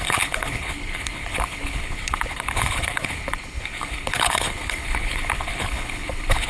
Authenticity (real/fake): fake